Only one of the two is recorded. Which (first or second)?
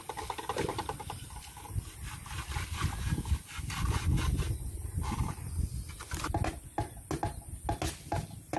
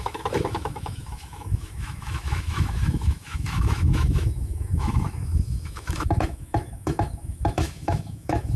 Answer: first